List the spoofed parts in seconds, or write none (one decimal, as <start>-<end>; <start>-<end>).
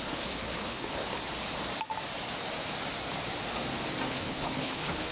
0.0-1.0; 4.1-5.1